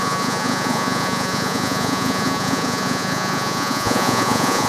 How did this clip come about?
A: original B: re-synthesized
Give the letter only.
B